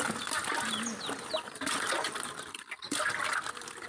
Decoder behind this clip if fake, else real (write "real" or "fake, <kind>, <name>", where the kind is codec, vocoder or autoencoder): real